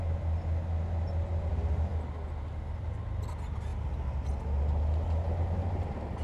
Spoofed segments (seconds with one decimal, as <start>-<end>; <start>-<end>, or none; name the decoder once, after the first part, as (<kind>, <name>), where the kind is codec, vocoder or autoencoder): none